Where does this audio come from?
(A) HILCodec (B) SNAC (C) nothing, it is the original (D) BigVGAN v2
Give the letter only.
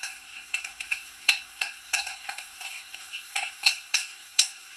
B